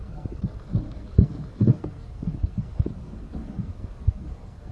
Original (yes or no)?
no